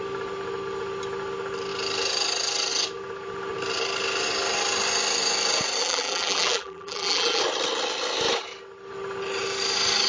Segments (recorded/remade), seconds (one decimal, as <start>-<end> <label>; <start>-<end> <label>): 0.0-5.8 recorded; 5.8-7.4 remade; 7.4-10.1 recorded